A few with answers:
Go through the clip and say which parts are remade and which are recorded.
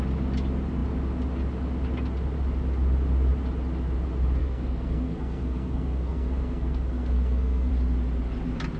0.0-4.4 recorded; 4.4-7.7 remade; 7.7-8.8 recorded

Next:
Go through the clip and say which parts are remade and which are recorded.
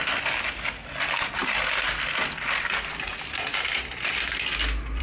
0.0-5.0 recorded